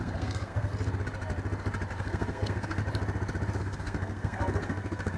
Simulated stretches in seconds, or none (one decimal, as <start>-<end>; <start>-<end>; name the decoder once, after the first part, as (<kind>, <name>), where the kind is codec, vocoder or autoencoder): 0.0-0.7 (codec, SNAC); 2.0-2.8; 3.6-5.2